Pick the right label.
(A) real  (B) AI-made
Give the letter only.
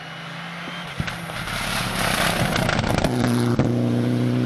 A